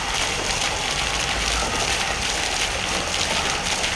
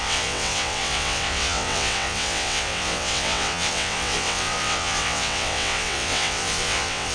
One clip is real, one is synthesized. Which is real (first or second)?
first